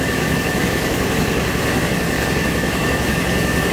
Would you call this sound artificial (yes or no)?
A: yes